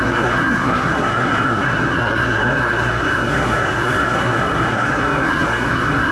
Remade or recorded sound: remade